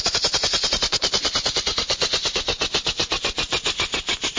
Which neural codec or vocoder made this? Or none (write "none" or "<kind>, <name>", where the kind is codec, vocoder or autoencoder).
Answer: none